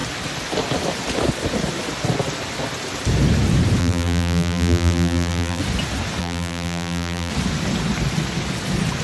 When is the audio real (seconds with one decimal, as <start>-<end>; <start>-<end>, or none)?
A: 0.0-3.8; 5.6-6.2; 7.3-9.0